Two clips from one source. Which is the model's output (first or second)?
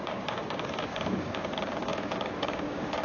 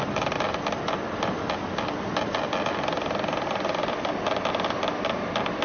first